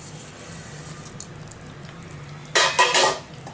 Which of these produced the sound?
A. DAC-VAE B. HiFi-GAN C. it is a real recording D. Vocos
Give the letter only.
C